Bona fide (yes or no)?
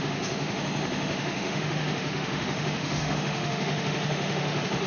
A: no